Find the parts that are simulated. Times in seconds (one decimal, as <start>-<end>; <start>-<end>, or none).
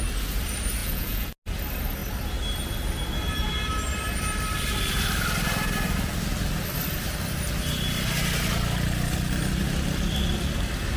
0.8-1.3